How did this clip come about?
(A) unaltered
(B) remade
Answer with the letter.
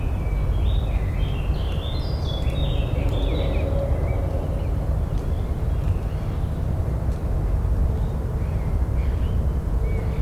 A